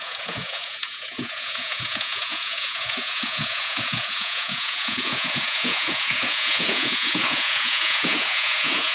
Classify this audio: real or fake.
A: fake